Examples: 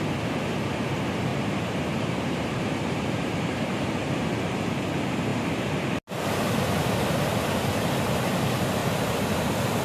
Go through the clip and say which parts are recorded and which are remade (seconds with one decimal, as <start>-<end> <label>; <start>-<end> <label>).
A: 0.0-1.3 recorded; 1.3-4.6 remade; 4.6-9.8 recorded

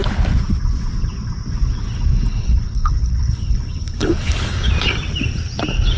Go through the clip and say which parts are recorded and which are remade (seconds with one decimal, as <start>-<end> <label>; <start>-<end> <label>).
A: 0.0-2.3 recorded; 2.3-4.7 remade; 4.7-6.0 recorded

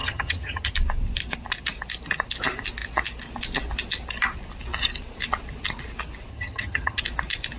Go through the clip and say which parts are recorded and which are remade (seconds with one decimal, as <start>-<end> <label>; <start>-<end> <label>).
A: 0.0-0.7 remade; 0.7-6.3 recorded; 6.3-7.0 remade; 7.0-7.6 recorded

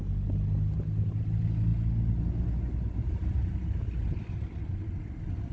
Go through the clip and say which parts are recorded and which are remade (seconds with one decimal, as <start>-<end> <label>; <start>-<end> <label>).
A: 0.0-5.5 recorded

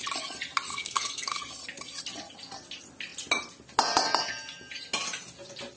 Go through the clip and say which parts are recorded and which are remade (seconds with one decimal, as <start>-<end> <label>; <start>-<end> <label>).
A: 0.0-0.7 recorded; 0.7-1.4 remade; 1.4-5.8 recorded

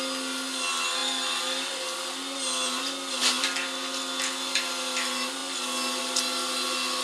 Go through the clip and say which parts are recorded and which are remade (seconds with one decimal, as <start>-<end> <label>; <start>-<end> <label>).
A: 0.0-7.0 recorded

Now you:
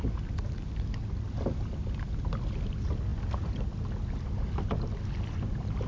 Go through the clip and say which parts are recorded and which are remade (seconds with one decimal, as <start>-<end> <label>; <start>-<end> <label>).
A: 0.0-5.9 recorded

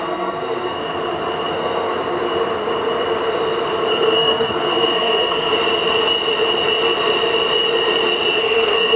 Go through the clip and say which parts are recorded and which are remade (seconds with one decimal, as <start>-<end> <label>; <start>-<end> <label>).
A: 0.0-0.8 remade; 0.8-1.5 recorded; 1.5-1.9 remade; 1.9-3.9 recorded; 3.9-5.5 remade; 5.5-8.4 recorded; 8.4-9.0 remade